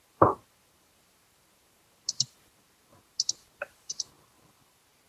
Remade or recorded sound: remade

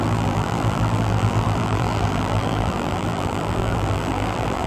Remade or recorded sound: remade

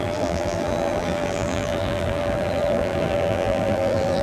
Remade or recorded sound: remade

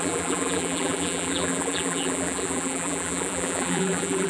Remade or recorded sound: remade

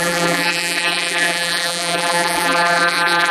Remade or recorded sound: remade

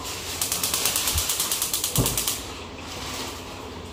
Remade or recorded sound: remade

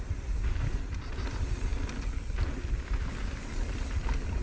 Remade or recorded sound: recorded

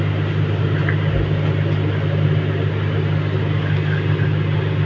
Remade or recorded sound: recorded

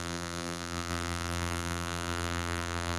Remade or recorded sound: remade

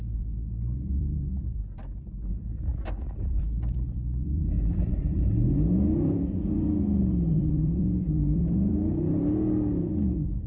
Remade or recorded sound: remade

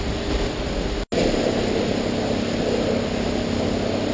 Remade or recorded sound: recorded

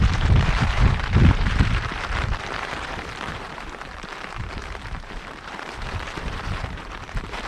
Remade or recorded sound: remade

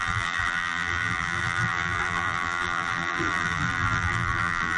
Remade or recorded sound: remade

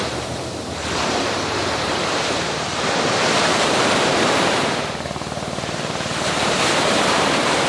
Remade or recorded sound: remade